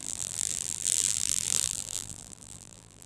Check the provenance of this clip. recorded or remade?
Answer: remade